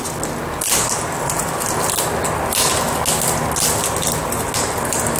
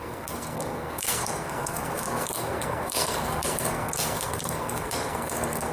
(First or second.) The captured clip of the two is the first